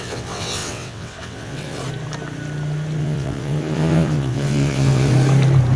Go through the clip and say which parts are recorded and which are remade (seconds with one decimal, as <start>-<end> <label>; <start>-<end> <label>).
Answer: 0.0-1.8 remade; 1.8-3.0 recorded; 3.0-5.1 remade; 5.1-5.8 recorded

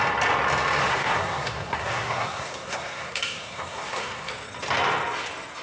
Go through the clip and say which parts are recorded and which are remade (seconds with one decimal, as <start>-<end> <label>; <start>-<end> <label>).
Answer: 0.0-0.9 recorded; 0.9-4.3 remade; 4.3-5.6 recorded

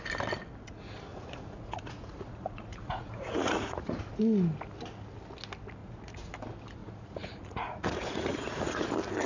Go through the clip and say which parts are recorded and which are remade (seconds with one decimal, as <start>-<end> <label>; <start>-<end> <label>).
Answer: 0.0-1.1 recorded; 1.1-4.2 remade; 4.2-5.8 recorded; 5.8-6.3 remade; 6.3-6.8 recorded; 6.8-8.9 remade; 8.9-9.3 recorded

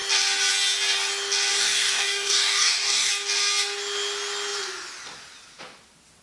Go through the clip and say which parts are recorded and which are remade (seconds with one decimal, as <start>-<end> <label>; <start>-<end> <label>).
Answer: 0.0-1.5 recorded; 1.5-3.1 remade; 3.1-6.2 recorded

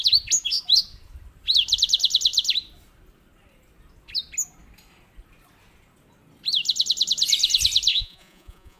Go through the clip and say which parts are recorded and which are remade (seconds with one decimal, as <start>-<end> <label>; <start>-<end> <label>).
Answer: 0.0-7.9 recorded; 7.9-8.8 remade

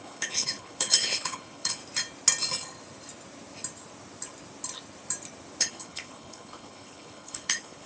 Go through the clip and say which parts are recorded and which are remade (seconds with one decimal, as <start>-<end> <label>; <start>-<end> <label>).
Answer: 0.0-1.8 remade; 1.8-5.6 recorded; 5.6-7.9 remade

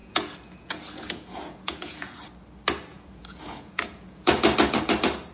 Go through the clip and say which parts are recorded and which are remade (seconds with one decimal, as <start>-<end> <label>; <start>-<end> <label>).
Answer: 0.0-2.1 remade; 2.1-2.9 recorded; 2.9-4.3 remade; 4.3-5.3 recorded